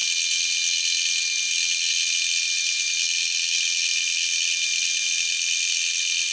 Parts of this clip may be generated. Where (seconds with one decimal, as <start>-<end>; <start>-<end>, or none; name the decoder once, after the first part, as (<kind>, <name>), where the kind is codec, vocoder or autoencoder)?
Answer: none